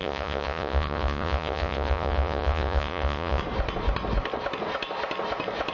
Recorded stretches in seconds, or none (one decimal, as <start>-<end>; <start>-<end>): 3.4-5.7